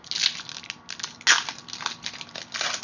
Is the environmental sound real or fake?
real